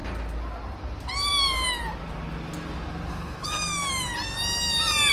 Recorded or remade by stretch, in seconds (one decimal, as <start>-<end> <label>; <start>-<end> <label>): 0.0-3.1 recorded; 3.1-4.1 remade; 4.1-5.1 recorded